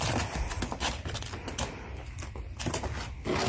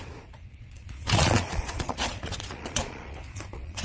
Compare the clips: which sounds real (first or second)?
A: first